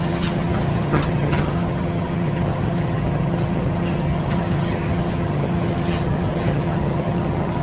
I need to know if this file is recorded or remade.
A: remade